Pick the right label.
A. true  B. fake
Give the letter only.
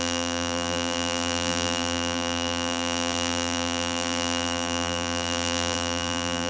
B